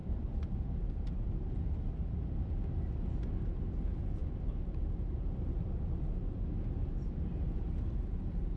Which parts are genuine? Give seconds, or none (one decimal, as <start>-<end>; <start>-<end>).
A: 0.9-8.6